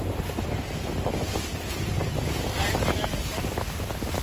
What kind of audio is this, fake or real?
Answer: real